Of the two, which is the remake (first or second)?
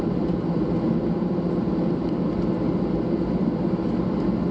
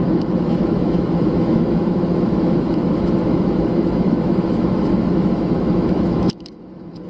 second